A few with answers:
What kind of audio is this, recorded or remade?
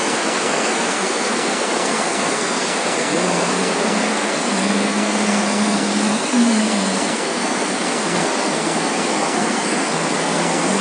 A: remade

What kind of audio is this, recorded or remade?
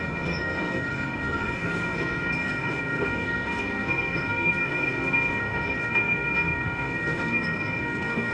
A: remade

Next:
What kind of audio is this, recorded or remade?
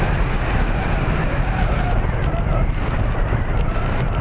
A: recorded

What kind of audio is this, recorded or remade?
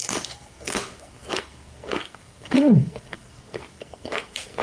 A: remade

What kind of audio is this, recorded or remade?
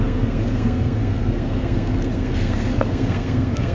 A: remade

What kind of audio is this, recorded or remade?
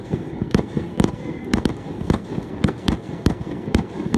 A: remade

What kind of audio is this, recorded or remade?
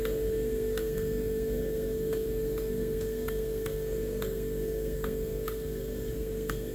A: remade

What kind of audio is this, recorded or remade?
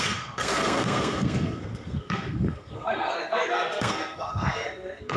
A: remade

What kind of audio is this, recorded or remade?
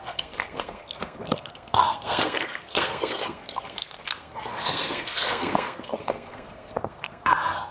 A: remade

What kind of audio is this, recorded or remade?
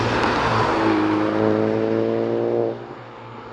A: recorded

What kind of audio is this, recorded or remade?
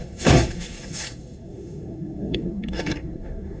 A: remade